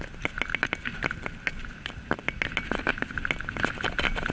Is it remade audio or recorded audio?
recorded